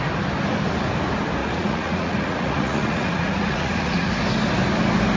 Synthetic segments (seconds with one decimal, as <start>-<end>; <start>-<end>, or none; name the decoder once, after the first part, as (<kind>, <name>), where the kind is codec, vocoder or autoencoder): 1.4-4.1 (vocoder, Vocos)